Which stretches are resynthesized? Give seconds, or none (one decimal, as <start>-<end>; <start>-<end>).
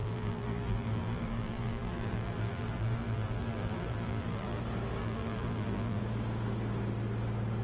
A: 0.0-4.6; 5.0-6.0